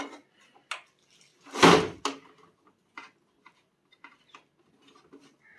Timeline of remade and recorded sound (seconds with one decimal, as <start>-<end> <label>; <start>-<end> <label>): 0.0-5.6 recorded